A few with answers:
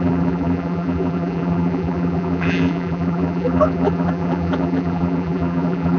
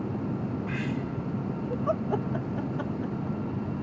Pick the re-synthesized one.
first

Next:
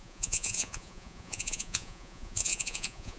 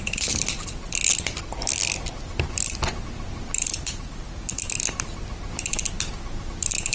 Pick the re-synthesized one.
first